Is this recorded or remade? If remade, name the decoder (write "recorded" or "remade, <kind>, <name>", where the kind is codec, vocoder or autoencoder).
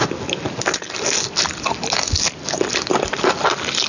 recorded